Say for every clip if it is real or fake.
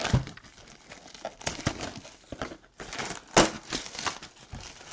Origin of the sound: real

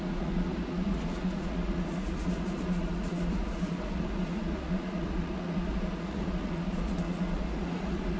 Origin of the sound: fake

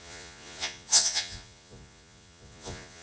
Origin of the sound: fake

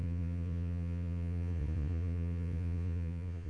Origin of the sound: fake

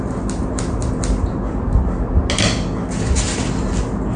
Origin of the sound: real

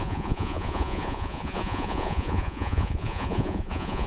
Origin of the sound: fake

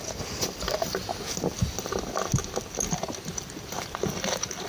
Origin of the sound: real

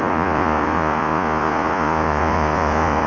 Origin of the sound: fake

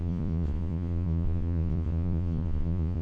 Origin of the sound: fake